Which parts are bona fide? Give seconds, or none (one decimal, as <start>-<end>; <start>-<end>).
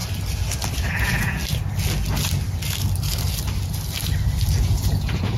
0.0-0.9; 1.4-4.6